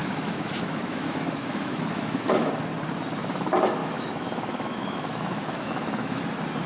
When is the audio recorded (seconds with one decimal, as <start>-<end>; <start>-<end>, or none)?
2.5-3.8; 6.2-6.7